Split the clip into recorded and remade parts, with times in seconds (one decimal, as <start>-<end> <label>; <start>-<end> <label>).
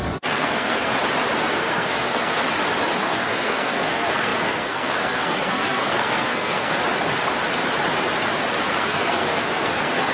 0.0-0.9 remade; 0.9-1.4 recorded; 1.4-2.4 remade; 2.4-3.0 recorded; 3.0-6.8 remade; 6.8-8.6 recorded; 8.6-10.1 remade